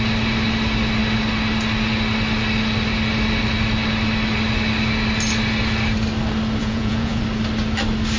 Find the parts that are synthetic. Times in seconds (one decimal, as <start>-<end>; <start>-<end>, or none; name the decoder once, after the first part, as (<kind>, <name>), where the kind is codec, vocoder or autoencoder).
6.6-7.2 (vocoder, Vocos)